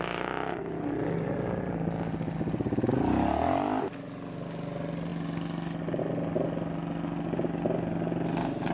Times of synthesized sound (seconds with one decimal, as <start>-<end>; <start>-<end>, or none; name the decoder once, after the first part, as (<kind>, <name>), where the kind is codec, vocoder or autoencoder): none